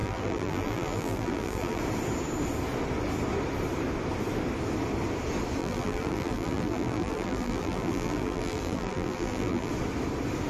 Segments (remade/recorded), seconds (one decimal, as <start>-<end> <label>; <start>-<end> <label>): 0.0-1.8 remade; 1.8-5.6 recorded; 5.6-9.7 remade; 9.7-10.5 recorded